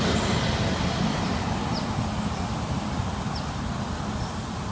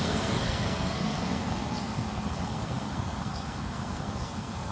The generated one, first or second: second